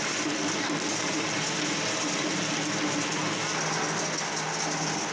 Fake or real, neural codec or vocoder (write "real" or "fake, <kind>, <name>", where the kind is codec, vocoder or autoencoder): real